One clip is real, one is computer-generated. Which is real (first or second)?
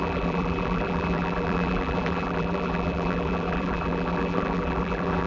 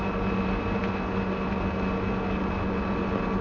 second